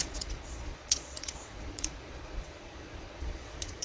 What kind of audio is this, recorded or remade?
remade